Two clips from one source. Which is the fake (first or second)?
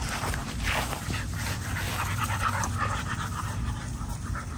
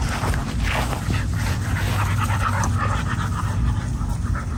first